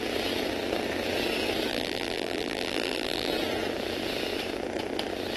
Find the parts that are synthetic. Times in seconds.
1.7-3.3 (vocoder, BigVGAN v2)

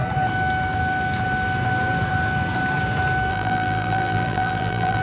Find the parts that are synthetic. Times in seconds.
3.3-5.0 (vocoder, BigVGAN v2)

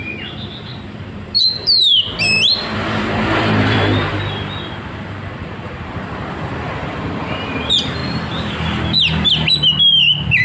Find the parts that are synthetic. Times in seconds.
0.0-8.0 (vocoder, BigVGAN v2); 8.5-10.4

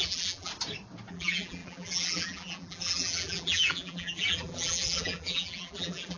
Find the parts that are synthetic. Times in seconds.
0.0-0.5 (vocoder, BigVGAN v2); 1.1-6.2

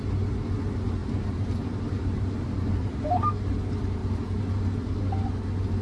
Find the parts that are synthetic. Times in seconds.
1.0-3.6 (vocoder, BigVGAN v2); 4.0-5.0